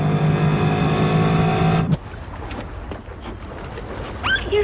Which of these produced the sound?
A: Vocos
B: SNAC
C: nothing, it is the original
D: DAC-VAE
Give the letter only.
C